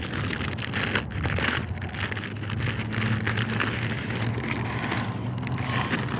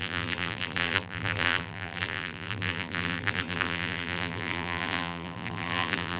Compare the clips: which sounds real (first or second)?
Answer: first